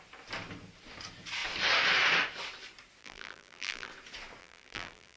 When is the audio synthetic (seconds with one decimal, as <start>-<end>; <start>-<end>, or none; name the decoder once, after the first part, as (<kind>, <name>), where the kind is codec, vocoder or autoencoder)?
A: 3.0-3.9 (vocoder, BigVGAN v2); 4.4-5.2